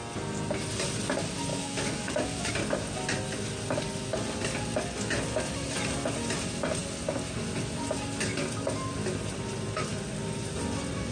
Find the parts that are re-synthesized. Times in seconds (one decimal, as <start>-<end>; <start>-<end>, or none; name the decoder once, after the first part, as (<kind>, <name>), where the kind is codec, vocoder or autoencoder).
1.5-2.5 (codec, DAC)